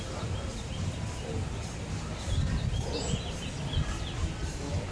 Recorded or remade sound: recorded